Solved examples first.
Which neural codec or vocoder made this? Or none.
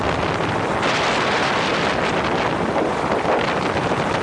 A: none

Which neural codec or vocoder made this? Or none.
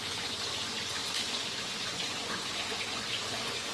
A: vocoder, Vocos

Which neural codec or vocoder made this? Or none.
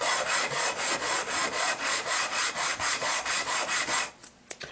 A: vocoder, Vocos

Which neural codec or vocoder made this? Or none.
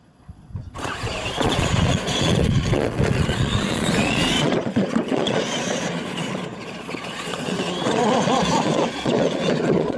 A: vocoder, Vocos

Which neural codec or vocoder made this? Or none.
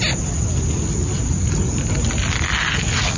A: none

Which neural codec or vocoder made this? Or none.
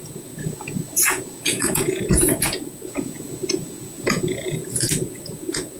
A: vocoder, Vocos